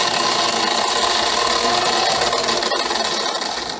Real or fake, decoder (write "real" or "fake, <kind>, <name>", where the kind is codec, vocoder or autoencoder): real